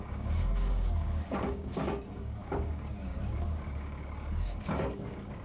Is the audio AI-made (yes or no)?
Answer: yes